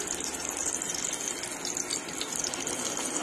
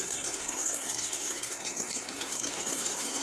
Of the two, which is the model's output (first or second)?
second